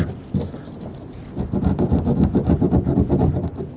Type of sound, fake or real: real